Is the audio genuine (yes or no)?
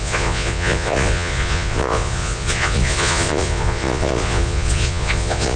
no